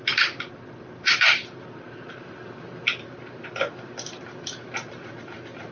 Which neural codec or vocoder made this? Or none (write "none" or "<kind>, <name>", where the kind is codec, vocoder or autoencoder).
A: vocoder, BigVGAN v2